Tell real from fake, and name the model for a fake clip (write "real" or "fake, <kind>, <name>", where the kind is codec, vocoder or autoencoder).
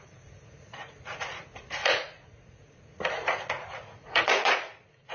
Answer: fake, vocoder, Vocos